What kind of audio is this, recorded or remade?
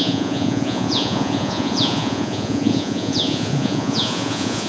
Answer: remade